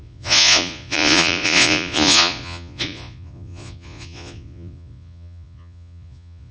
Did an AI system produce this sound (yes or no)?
yes